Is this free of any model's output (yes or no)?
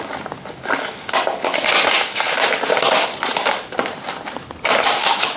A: yes